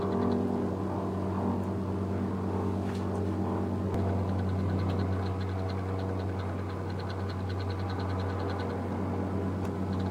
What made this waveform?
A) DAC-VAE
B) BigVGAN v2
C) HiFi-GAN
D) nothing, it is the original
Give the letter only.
D